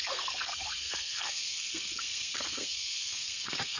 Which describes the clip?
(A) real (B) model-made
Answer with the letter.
B